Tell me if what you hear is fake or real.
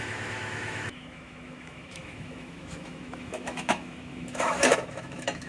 fake